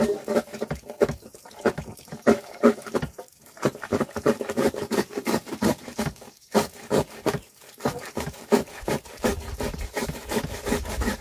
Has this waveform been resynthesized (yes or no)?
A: yes